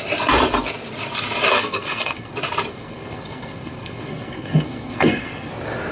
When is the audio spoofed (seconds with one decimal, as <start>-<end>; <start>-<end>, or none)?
1.5-2.3; 2.7-5.5